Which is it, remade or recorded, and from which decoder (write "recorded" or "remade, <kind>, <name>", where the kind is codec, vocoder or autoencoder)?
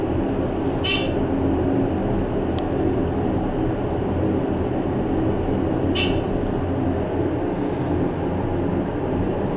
recorded